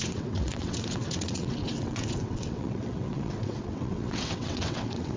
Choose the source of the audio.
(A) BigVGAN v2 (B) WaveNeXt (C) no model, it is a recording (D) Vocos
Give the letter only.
B